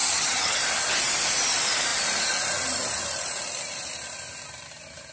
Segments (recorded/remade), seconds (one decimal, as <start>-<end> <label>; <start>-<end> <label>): 0.0-0.6 remade; 0.6-5.1 recorded

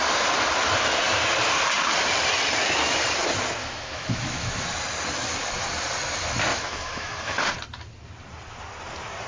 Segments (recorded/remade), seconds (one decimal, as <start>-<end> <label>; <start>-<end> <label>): 0.0-3.6 recorded; 3.6-4.7 remade; 4.7-6.5 recorded; 6.5-7.5 remade; 7.5-9.3 recorded